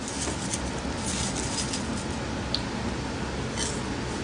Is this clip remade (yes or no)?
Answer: no